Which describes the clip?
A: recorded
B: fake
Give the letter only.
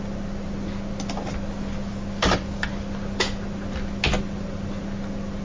A